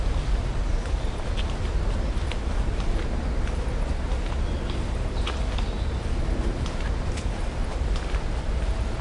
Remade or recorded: recorded